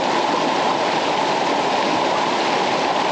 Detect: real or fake real